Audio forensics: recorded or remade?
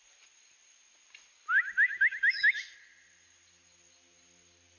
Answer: recorded